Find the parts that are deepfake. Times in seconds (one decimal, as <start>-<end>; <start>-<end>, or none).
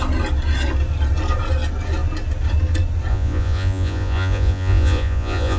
3.1-5.6